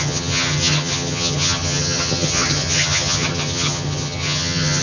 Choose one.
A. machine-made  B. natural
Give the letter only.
A